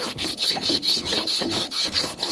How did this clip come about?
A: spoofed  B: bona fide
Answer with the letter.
A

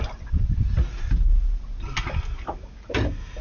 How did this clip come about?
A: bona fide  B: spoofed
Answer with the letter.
A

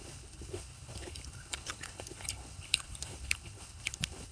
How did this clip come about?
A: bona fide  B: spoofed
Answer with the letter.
B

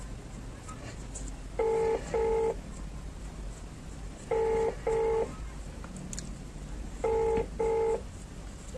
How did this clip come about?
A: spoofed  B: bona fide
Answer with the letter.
B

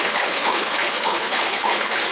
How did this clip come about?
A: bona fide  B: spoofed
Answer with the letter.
B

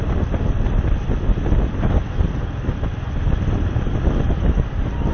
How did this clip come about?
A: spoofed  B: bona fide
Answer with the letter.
B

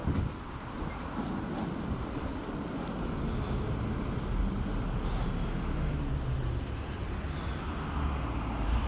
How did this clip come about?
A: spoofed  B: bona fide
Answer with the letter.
B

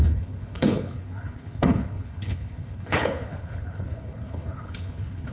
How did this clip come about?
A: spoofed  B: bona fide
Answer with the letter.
A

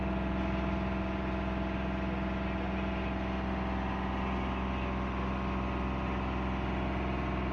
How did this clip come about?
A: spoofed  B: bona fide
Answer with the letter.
B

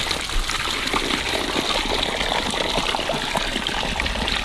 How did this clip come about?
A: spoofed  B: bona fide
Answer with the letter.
B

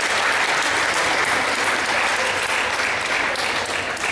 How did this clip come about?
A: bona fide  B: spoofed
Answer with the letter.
A